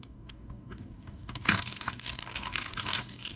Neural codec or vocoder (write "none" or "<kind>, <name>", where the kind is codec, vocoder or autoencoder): codec, DAC